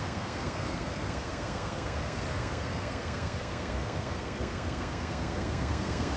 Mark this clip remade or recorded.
remade